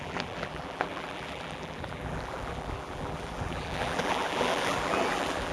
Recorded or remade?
remade